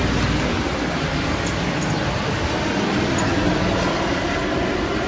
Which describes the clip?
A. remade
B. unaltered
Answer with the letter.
B